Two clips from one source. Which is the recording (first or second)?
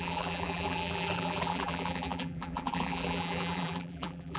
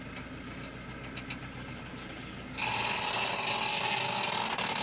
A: second